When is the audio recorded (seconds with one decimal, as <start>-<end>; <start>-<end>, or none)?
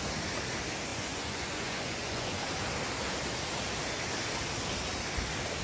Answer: 0.0-0.9; 2.4-5.6